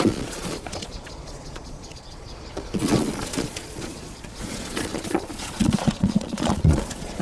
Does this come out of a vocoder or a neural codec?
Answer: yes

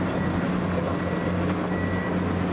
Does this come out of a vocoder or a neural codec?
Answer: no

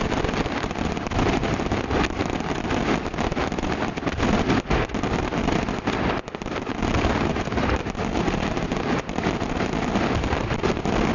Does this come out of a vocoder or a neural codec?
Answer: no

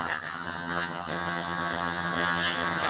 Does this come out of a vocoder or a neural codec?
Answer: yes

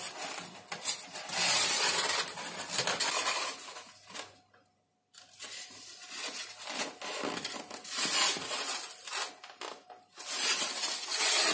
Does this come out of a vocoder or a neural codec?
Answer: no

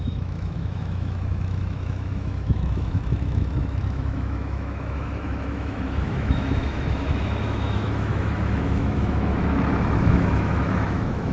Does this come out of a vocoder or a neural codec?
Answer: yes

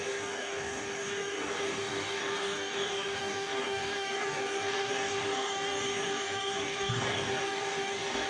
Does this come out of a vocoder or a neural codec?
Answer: yes